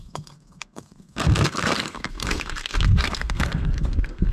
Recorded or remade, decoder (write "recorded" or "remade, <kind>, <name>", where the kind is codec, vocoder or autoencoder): remade, codec, SNAC